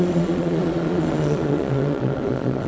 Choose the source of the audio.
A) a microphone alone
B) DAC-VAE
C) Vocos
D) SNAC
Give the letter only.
C